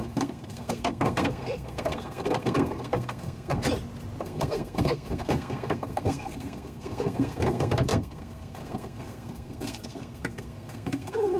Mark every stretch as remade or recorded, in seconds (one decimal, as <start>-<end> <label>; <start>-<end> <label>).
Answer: 0.0-3.6 remade; 3.6-4.2 recorded; 4.2-11.4 remade